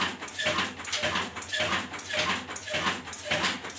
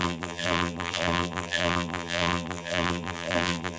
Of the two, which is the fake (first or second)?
second